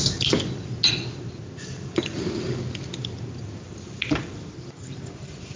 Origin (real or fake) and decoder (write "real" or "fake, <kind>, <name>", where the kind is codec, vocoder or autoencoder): real